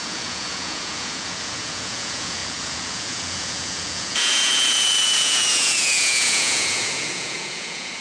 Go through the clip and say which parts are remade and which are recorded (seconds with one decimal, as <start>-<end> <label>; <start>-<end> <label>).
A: 0.0-8.0 remade